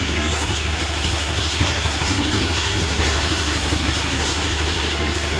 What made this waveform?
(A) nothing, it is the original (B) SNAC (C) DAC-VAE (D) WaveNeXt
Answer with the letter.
B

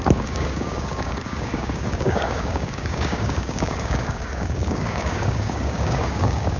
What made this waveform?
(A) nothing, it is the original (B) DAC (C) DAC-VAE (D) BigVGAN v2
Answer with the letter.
B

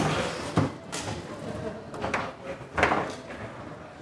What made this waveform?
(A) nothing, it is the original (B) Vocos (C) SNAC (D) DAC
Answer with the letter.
A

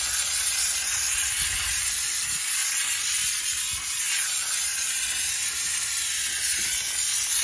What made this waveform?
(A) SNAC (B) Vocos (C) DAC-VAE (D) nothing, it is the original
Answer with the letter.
D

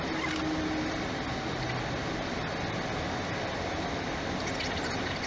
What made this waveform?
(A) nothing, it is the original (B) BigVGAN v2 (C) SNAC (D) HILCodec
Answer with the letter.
A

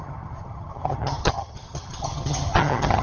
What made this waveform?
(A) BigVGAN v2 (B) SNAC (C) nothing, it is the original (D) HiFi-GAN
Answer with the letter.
D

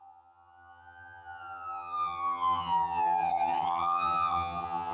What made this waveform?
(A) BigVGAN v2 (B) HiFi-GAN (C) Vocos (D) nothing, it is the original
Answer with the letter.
B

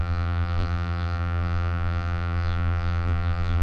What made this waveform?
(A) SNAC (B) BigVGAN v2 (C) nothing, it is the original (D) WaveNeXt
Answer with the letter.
B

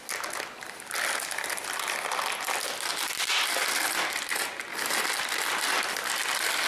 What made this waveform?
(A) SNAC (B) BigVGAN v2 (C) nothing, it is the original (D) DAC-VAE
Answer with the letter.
C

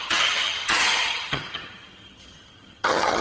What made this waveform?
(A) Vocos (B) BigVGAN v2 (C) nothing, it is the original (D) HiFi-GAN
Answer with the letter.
D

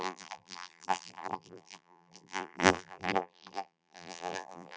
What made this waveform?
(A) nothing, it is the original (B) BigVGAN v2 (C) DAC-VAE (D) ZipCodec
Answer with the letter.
B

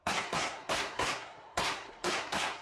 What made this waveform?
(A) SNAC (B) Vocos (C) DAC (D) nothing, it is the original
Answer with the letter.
A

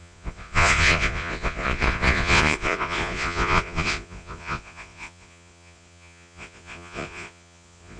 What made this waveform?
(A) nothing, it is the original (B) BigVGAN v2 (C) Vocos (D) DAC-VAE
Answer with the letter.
C